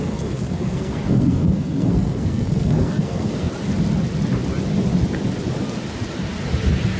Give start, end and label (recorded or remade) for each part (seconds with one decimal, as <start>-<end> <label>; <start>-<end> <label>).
0.0-3.5 remade; 3.5-7.0 recorded